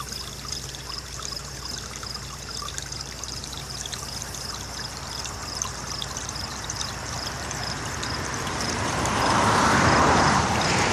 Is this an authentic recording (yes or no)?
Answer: no